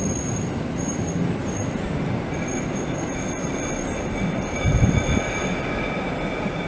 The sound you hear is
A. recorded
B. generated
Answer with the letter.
A